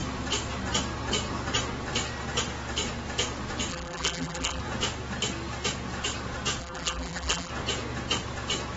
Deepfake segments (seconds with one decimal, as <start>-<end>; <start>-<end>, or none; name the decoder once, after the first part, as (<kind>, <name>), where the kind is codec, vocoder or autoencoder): 3.7-4.6 (vocoder, BigVGAN v2); 6.6-7.5